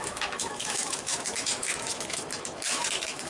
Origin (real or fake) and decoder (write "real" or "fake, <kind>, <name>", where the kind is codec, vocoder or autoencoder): fake, autoencoder, DAC-VAE